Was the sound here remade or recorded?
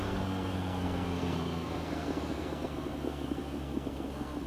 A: remade